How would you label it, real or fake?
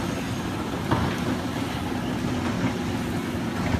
real